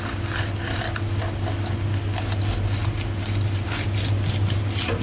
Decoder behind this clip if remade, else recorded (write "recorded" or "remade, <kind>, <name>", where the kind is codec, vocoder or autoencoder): recorded